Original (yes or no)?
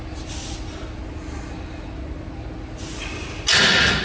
yes